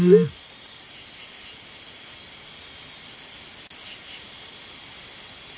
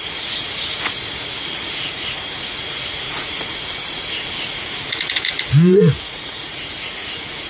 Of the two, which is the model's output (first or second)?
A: second